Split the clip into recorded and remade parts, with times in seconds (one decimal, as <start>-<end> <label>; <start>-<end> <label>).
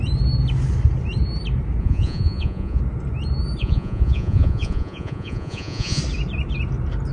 0.0-1.8 recorded; 1.8-2.8 remade; 2.8-3.6 recorded; 3.6-6.0 remade; 6.0-7.1 recorded